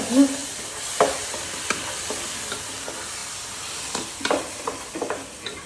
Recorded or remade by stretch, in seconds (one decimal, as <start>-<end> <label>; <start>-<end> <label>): 0.0-0.4 recorded; 0.4-2.5 remade; 2.5-5.7 recorded